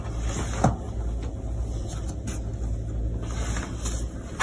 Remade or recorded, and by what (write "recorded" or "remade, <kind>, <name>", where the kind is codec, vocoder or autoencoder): recorded